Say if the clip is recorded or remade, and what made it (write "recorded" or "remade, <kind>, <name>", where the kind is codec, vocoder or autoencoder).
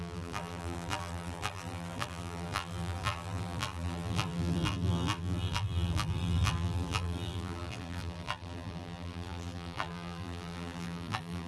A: remade, vocoder, BigVGAN v2